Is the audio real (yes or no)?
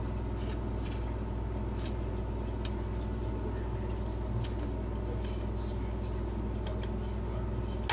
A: yes